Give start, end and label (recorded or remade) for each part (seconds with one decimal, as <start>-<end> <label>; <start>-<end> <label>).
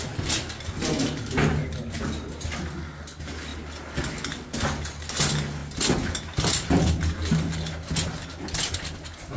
0.0-9.4 recorded